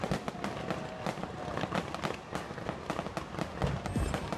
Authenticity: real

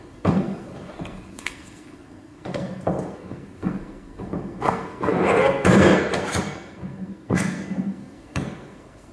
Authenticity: fake